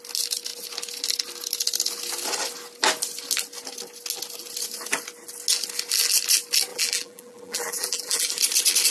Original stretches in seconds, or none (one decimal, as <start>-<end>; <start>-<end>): 0.0-6.7; 8.3-8.9

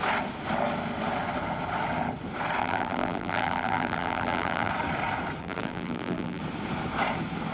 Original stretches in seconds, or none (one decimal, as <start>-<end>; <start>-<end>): 0.0-2.6; 4.7-5.4; 6.4-7.5